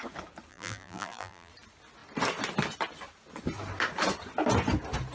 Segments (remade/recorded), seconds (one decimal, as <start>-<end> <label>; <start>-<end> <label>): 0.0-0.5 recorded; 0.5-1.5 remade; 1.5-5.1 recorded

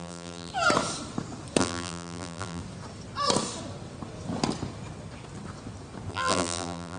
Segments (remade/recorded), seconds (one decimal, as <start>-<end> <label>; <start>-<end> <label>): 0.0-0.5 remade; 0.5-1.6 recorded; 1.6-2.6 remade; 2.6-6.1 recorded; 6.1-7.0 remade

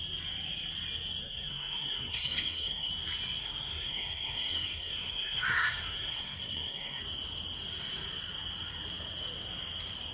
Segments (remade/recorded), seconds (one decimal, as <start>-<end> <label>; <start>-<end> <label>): 0.0-1.2 recorded; 1.2-2.9 remade; 2.9-3.4 recorded; 3.4-7.0 remade; 7.0-10.1 recorded

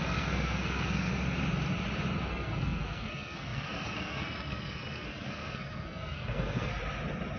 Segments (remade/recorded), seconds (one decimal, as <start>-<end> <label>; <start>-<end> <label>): 0.0-1.1 remade; 1.1-2.3 recorded; 2.3-6.7 remade; 6.7-7.4 recorded

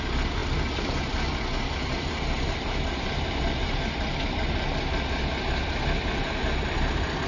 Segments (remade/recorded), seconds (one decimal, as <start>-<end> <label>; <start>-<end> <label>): 0.0-7.3 recorded